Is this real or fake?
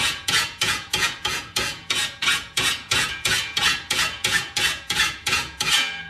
fake